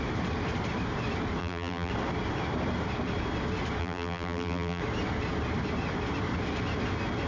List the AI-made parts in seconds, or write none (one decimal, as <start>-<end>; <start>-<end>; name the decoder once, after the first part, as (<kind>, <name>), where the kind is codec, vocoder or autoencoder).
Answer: 1.4-1.9 (vocoder, BigVGAN v2); 3.8-4.8